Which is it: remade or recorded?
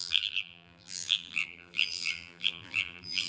remade